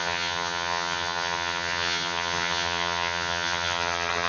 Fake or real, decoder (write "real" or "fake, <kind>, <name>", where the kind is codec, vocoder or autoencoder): fake, vocoder, HiFi-GAN